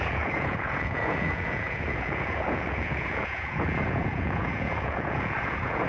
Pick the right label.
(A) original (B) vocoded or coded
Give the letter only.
B